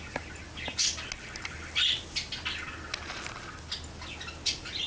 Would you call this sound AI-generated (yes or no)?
no